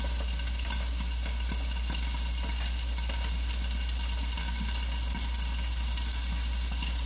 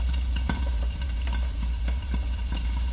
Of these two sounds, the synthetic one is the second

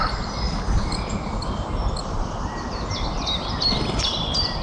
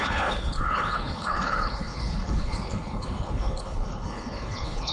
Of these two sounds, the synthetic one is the second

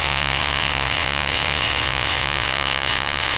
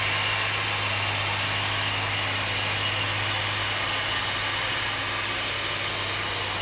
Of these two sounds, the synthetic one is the first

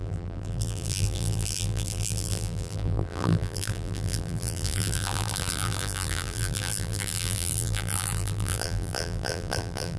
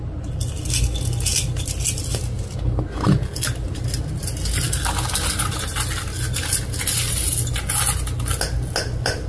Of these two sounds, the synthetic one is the first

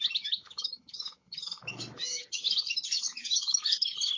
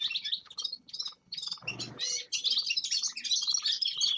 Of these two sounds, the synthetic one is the first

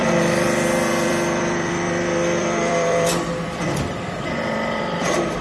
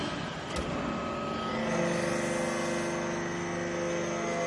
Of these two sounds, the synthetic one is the first